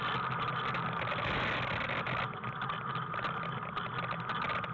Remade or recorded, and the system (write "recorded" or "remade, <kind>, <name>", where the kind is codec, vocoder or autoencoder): recorded